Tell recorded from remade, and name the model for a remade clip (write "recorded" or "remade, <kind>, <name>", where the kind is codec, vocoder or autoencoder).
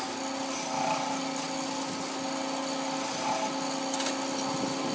recorded